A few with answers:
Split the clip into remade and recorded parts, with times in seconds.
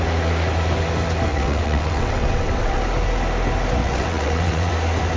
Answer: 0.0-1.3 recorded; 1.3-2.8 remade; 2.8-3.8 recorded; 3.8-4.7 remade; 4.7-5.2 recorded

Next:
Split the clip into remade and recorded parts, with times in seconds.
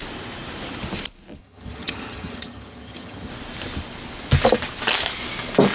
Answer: 0.0-1.4 recorded; 1.4-3.3 remade; 3.3-5.7 recorded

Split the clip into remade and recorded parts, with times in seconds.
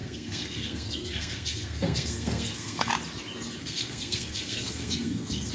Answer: 0.0-2.9 remade; 2.9-3.6 recorded; 3.6-5.5 remade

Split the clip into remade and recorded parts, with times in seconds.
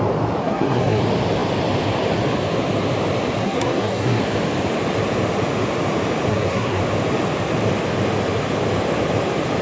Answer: 0.0-0.4 recorded; 0.4-1.0 remade; 1.0-3.4 recorded; 3.4-4.2 remade; 4.2-6.3 recorded; 6.3-6.8 remade; 6.8-9.6 recorded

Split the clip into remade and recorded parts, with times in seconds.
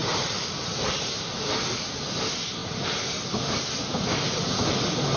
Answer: 0.0-1.4 remade; 1.4-5.2 recorded